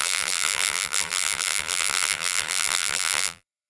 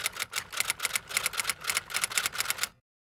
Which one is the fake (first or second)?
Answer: first